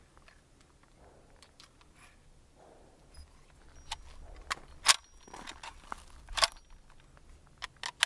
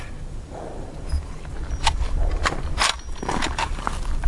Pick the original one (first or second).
first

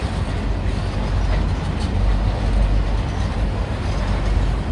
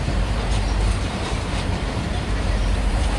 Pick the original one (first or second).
first